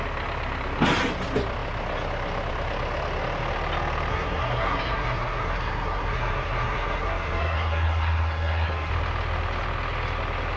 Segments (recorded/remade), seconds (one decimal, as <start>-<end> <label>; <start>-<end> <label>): 0.0-4.1 recorded; 4.1-8.9 remade; 8.9-10.6 recorded